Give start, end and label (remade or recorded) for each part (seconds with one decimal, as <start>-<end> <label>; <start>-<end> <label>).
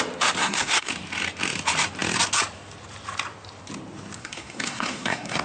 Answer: 0.0-0.4 recorded; 0.4-0.9 remade; 0.9-4.2 recorded; 4.2-5.4 remade